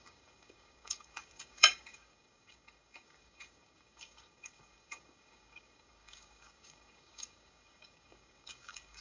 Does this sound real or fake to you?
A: fake